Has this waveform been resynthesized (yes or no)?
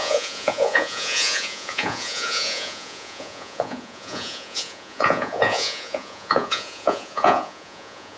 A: yes